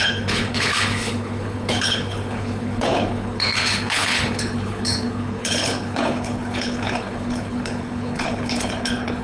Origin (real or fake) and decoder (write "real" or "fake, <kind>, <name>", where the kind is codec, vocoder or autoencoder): fake, codec, HILCodec